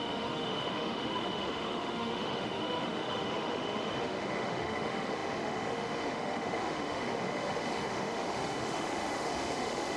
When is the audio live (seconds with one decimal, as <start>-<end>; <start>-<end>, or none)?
none